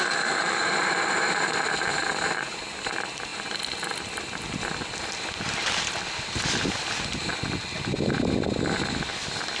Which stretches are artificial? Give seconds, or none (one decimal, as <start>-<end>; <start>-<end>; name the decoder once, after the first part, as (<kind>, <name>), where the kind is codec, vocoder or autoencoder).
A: 0.6-2.8 (vocoder, BigVGAN v2); 3.3-3.9